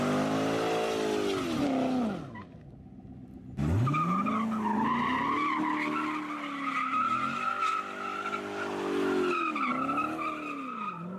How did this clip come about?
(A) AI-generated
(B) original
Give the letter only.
B